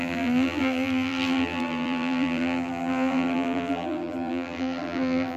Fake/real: fake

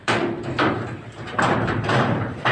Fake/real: fake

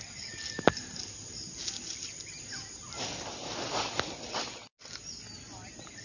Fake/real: real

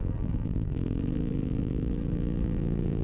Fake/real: fake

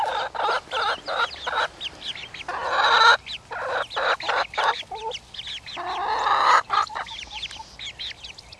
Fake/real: fake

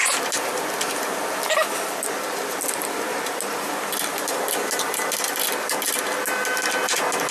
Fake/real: real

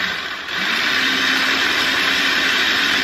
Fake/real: fake